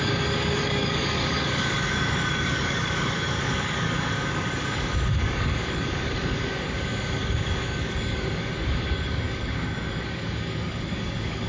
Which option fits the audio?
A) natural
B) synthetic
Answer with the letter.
B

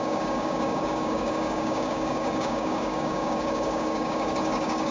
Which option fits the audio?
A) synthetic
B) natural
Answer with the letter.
A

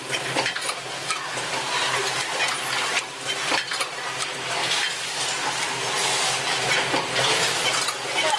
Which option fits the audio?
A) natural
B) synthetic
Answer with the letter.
A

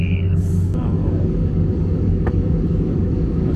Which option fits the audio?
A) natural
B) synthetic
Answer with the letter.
B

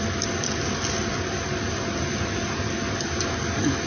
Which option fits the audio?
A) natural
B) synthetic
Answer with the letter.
A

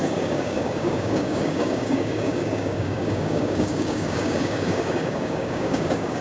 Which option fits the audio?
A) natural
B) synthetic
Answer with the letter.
B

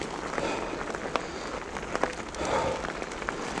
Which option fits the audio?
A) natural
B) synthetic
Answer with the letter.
A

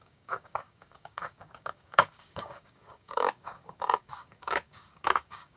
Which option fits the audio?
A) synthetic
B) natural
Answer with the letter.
A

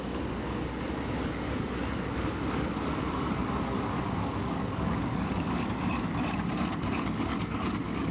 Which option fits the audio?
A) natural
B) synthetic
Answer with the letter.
B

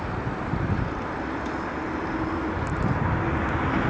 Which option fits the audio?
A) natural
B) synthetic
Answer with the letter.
A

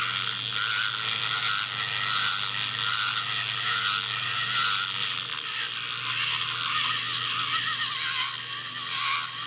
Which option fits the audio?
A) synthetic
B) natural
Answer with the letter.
B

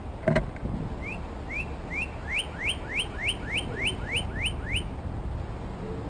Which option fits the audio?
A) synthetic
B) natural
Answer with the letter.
B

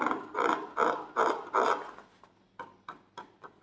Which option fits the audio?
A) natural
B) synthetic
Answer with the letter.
A